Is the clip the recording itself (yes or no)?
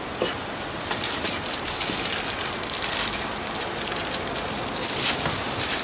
yes